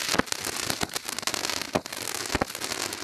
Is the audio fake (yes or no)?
no